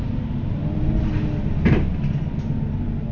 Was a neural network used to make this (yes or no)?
no